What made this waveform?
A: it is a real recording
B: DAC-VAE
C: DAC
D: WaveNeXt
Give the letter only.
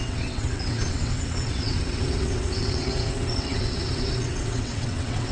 D